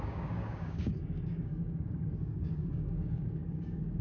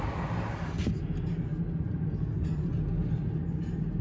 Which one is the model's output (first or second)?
first